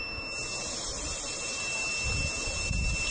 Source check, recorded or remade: recorded